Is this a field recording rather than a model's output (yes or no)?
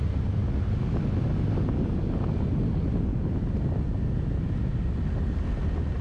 yes